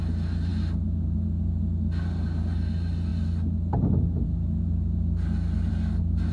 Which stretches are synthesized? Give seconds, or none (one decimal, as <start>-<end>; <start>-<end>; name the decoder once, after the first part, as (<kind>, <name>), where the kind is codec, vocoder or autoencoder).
none